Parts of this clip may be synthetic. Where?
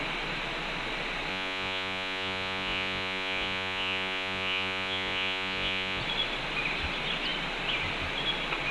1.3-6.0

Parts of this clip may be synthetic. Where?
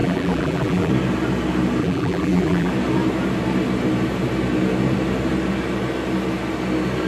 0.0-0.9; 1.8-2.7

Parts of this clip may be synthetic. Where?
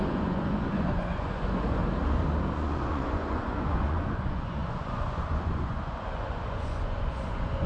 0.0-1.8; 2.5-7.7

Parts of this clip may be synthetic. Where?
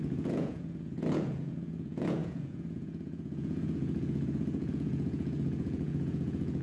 0.0-6.6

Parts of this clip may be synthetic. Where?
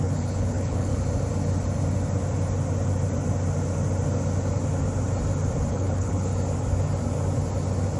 0.0-0.9; 5.7-6.3